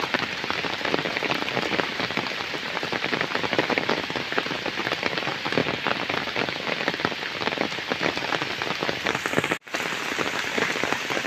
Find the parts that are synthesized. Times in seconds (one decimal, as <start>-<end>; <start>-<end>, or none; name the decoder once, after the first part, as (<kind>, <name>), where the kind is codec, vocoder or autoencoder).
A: 0.0-5.6 (vocoder, BigVGAN v2); 10.3-11.3